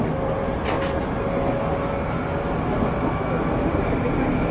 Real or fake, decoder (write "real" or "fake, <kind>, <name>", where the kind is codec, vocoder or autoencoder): real